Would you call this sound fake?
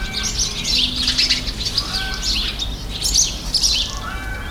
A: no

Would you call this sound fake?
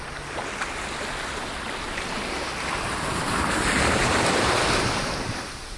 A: no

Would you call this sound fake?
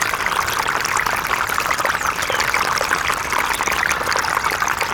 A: no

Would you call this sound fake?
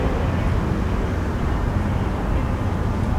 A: no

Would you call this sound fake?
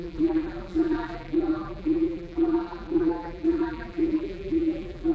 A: yes